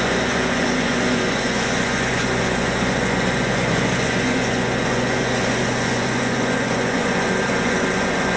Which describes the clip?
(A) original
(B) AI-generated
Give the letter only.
B